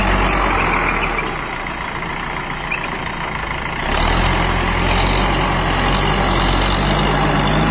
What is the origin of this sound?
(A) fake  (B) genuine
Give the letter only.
B